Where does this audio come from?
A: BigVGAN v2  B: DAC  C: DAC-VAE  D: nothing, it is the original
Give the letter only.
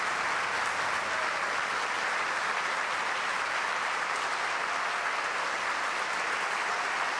D